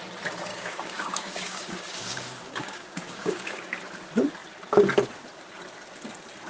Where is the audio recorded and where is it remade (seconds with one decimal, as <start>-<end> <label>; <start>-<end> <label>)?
0.0-0.5 recorded; 0.5-3.6 remade; 3.6-6.5 recorded